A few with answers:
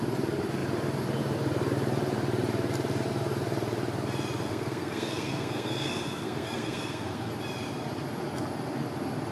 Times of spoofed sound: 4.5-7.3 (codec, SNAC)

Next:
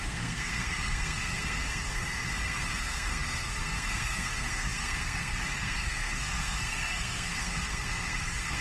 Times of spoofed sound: 0.0-8.6 (codec, SNAC)